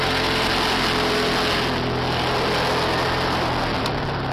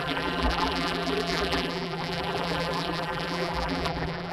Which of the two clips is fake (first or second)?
second